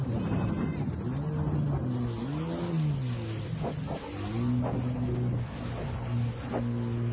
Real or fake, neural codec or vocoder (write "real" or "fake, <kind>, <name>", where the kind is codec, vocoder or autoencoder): real